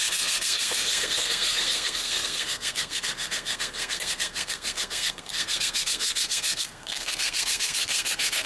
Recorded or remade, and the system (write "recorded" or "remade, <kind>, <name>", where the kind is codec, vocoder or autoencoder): remade, codec, SNAC